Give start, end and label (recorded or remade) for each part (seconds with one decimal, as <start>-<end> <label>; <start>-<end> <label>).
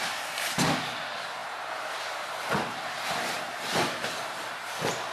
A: 0.0-1.4 recorded; 1.4-4.5 remade; 4.5-5.1 recorded